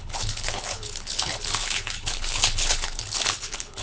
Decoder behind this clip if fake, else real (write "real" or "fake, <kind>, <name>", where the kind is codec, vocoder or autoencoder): fake, codec, HILCodec